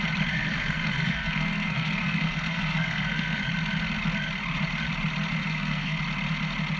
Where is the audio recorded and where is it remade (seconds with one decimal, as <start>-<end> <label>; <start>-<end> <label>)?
0.0-0.5 recorded; 0.5-3.4 remade; 3.4-5.4 recorded; 5.4-6.0 remade; 6.0-6.8 recorded